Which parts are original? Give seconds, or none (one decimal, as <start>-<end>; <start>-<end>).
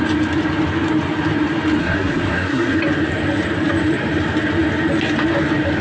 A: 0.0-1.8; 2.8-5.8